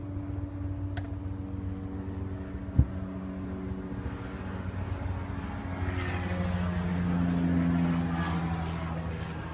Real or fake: real